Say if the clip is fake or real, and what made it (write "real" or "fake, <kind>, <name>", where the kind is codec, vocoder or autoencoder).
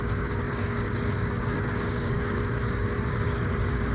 fake, codec, DAC